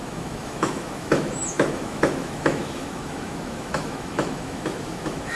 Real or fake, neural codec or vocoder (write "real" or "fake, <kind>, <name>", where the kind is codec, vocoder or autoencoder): fake, autoencoder, DAC-VAE